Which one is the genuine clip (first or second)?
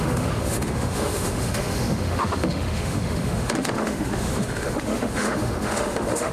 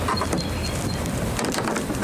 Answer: second